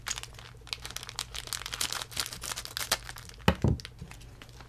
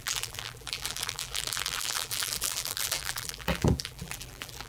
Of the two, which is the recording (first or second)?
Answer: first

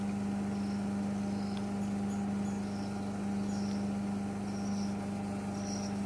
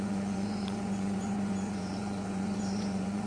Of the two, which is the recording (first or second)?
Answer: first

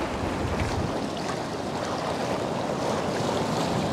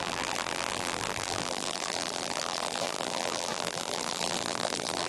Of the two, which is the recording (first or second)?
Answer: first